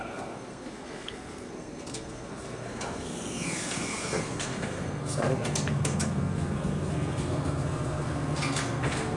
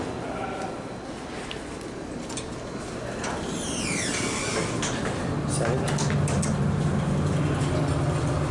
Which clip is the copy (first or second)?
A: first